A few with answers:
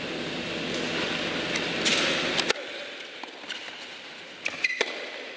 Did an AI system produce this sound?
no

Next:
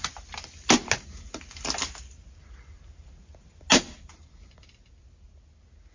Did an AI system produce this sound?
no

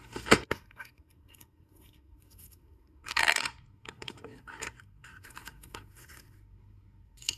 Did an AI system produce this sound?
yes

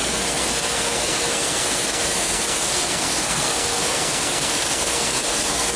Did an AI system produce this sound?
yes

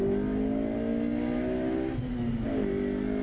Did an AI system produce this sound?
no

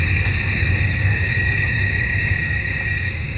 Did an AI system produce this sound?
yes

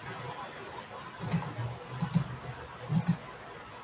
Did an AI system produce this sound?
no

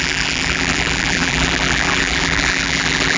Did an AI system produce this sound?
yes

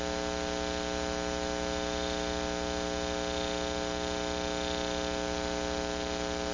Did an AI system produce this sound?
no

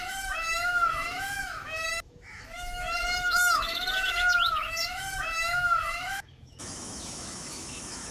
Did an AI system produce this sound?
yes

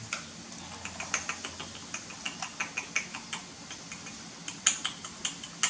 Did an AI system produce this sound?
no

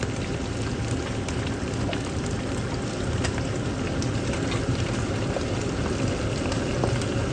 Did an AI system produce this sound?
yes